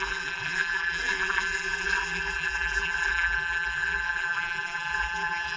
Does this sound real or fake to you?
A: fake